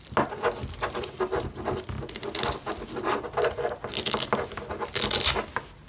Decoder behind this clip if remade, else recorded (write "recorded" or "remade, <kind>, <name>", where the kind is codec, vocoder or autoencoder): recorded